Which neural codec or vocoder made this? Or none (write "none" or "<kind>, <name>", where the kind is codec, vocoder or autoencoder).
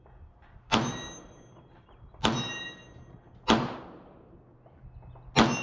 none